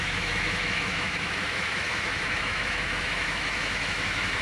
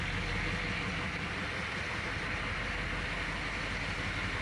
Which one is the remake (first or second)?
first